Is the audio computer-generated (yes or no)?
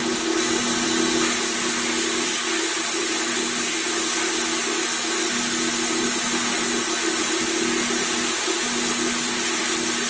no